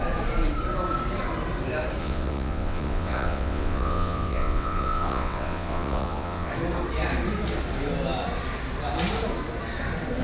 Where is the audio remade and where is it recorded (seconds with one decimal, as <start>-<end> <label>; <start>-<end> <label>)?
0.0-2.0 recorded; 2.0-6.5 remade; 6.5-10.2 recorded